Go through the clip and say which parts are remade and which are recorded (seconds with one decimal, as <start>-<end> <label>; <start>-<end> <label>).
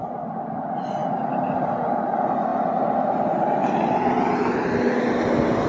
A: 0.0-5.7 recorded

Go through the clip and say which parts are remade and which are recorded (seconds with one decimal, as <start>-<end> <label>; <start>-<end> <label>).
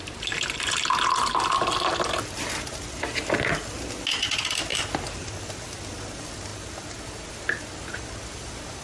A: 0.0-8.8 recorded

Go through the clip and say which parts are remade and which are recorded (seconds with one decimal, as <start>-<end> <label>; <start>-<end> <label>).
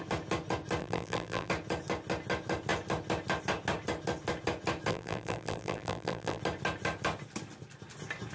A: 0.0-0.8 recorded; 0.8-1.5 remade; 1.5-4.9 recorded; 4.9-6.4 remade; 6.4-8.3 recorded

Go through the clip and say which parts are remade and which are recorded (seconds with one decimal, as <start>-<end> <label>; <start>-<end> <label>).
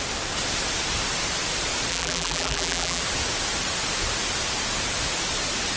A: 0.0-1.9 recorded; 1.9-3.0 remade; 3.0-5.8 recorded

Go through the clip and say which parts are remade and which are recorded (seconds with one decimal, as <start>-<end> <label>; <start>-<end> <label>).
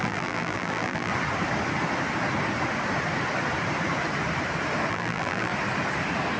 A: 0.0-1.1 remade; 1.1-4.9 recorded; 4.9-5.5 remade; 5.5-6.4 recorded